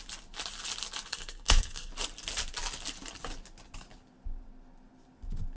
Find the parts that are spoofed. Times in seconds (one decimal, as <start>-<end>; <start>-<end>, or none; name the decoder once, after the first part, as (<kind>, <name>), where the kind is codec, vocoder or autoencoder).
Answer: 1.1-1.9 (codec, SNAC)